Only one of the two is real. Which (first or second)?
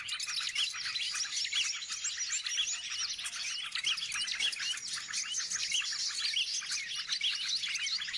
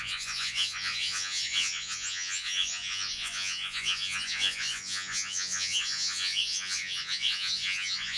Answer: first